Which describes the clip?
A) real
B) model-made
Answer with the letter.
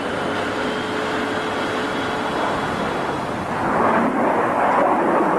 A